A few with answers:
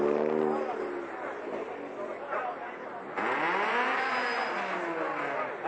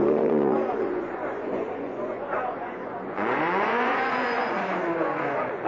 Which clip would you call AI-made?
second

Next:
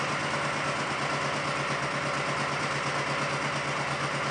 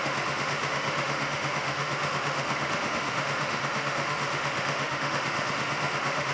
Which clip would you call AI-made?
second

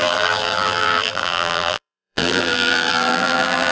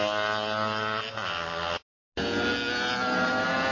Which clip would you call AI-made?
first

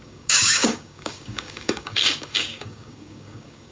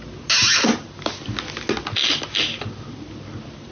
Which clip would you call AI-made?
first